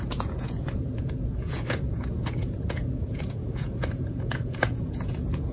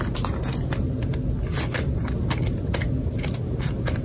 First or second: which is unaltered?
second